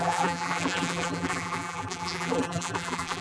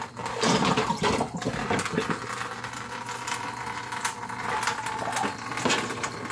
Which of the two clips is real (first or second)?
second